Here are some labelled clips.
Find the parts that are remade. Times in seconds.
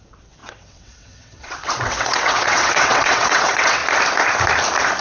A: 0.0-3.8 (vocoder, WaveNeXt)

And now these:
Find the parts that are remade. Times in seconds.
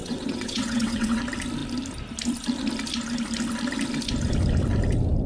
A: 0.0-1.2 (vocoder, WaveNeXt)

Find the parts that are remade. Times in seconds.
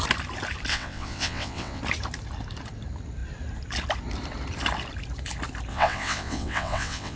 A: 0.7-1.8 (vocoder, WaveNeXt); 5.7-7.2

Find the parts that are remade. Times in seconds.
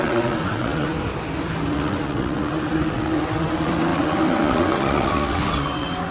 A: 0.0-0.9 (vocoder, WaveNeXt); 1.7-6.1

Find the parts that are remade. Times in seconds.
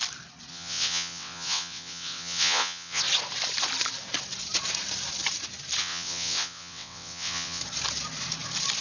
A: 0.5-3.0 (vocoder, WaveNeXt); 5.8-7.6